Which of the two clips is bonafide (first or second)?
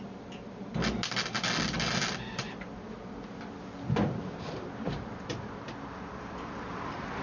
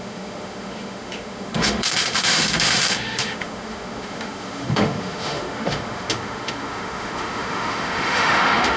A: first